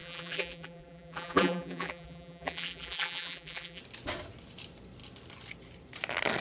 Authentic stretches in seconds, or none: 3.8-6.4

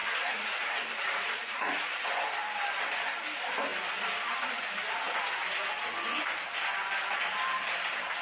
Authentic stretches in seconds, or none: 1.9-8.2